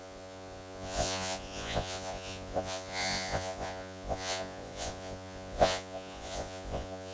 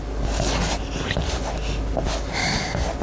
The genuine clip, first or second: second